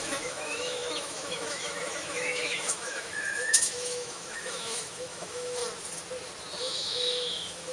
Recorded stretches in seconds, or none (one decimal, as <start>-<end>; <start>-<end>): 5.6-6.6

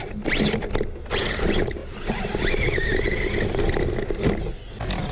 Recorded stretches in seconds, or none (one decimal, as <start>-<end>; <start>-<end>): 0.0-5.1

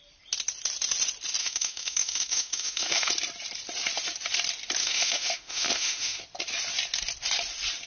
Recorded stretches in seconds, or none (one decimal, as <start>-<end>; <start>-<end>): 0.0-1.4; 3.1-4.8; 6.2-7.9

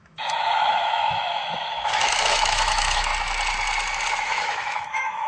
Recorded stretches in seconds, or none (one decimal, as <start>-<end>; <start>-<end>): 3.1-4.1

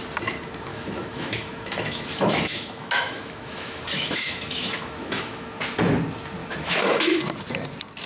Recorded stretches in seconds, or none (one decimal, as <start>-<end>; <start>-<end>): 0.0-0.7; 5.6-6.4; 7.2-8.1